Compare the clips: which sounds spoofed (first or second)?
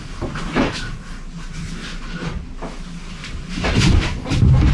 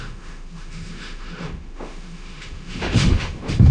second